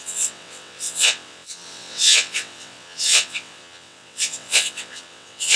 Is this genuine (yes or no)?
no